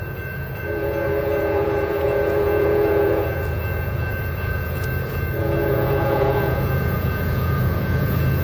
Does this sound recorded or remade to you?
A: remade